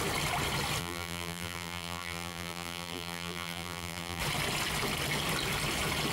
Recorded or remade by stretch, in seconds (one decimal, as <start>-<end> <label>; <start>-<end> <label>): 0.0-0.8 recorded; 0.8-4.2 remade; 4.2-6.1 recorded